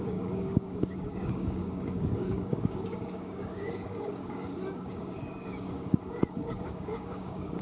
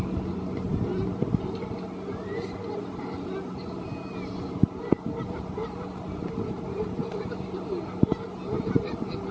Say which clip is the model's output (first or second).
first